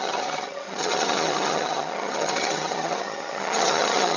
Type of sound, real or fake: fake